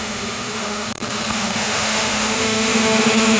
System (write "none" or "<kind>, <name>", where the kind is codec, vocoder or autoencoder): autoencoder, DAC-VAE